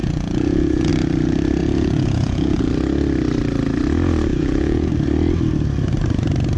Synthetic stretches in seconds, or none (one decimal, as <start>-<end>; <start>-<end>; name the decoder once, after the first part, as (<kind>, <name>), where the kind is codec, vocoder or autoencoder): 0.0-0.9 (vocoder, Vocos); 1.6-2.7; 4.3-4.9